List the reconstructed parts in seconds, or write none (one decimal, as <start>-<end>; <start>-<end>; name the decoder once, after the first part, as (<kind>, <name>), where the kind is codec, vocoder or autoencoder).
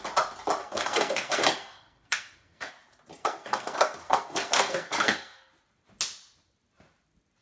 0.6-2.7 (codec, SNAC); 3.2-5.5